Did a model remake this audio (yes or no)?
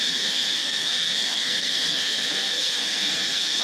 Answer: yes